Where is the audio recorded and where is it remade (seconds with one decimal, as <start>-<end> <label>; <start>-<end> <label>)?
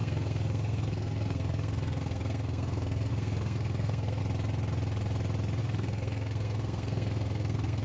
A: 0.0-4.2 remade; 4.2-5.6 recorded; 5.6-7.8 remade